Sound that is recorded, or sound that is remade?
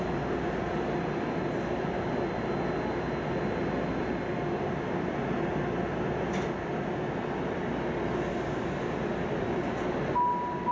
recorded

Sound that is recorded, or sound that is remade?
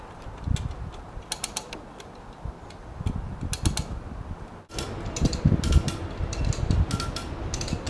recorded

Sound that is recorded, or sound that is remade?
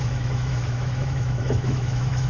remade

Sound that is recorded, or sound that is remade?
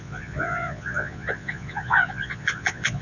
remade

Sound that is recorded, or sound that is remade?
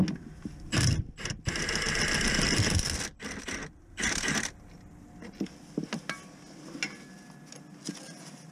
recorded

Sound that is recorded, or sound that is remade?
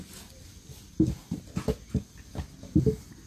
recorded